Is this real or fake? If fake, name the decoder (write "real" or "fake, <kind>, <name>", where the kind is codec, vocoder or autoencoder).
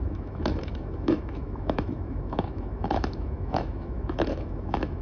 fake, autoencoder, DAC-VAE